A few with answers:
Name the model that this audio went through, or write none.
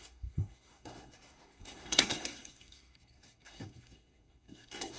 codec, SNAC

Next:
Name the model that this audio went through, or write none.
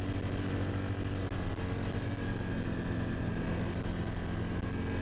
none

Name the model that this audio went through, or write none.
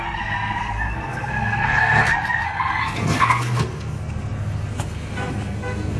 codec, SNAC